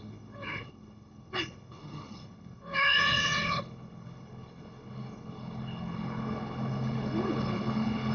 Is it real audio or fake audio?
fake